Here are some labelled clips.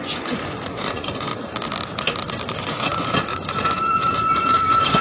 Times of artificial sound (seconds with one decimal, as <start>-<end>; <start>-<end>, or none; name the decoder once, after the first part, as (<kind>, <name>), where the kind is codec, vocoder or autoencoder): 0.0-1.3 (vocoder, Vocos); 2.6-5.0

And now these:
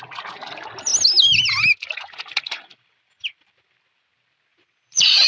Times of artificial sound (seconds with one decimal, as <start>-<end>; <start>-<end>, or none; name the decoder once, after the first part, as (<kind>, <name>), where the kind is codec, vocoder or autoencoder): 4.5-5.3 (vocoder, Vocos)

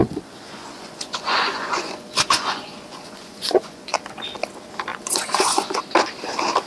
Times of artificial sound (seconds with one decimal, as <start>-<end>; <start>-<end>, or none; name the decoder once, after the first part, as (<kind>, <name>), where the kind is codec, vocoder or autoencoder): 0.0-4.0 (vocoder, Vocos); 4.9-5.8